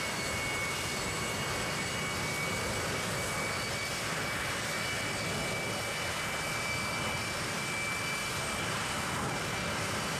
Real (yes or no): yes